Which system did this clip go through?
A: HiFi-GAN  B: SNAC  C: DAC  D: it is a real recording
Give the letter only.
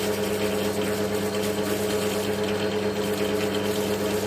D